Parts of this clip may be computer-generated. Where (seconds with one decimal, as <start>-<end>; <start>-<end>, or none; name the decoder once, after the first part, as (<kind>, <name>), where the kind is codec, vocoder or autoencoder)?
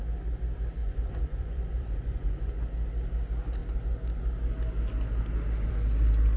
0.8-2.5 (vocoder, Vocos)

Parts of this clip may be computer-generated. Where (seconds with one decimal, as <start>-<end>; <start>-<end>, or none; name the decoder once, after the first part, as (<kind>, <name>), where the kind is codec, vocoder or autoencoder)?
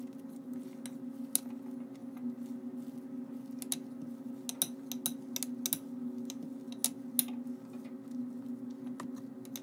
none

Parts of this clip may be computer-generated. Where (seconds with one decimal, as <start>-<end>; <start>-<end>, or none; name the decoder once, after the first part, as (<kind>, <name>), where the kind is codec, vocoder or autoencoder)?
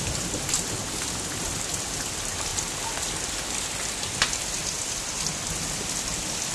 none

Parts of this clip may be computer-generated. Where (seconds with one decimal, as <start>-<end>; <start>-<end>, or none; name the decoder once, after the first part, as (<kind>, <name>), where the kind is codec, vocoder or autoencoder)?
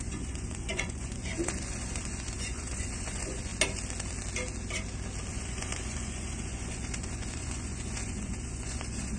0.0-3.5 (vocoder, Vocos); 5.3-9.2